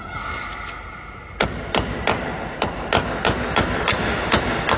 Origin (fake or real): real